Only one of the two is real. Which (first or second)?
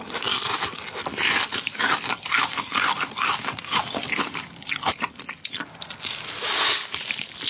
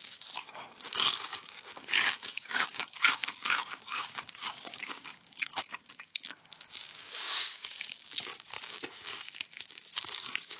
first